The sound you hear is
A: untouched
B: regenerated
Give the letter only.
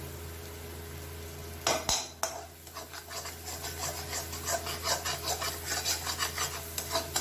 A